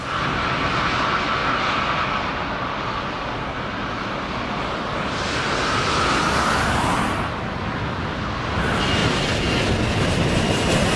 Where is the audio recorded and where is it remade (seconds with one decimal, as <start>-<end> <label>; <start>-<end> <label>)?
0.0-4.9 recorded; 4.9-5.9 remade; 5.9-9.0 recorded; 9.0-9.5 remade; 9.5-11.0 recorded